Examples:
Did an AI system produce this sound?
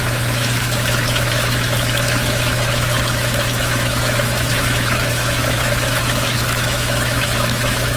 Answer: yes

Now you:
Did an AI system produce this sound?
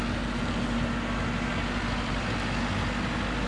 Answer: no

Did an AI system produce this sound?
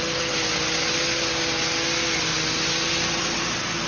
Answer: no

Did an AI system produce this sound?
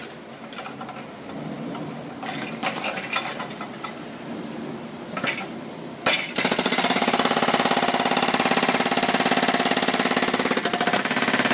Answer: no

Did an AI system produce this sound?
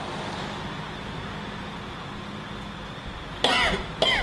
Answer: no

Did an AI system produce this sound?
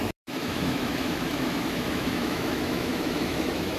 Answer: yes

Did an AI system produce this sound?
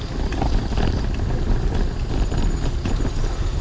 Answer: no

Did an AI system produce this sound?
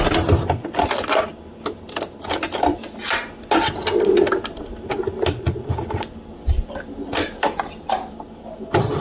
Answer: no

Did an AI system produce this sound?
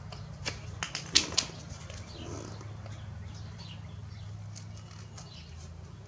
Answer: no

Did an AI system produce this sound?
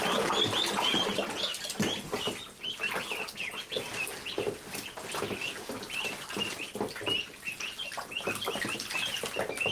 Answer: no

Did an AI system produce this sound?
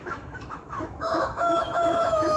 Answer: yes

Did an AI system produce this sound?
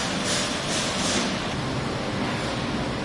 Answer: no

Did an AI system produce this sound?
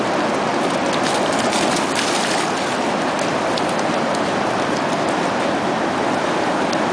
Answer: no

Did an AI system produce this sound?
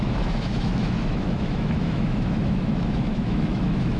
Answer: yes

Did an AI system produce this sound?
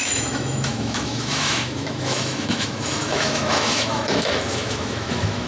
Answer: yes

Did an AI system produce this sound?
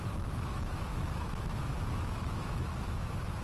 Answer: yes